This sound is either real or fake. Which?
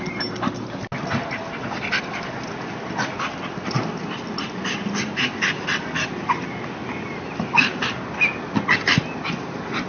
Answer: real